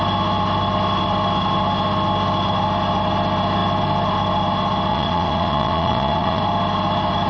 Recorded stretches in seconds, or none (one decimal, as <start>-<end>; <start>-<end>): 0.0-4.9; 6.4-7.3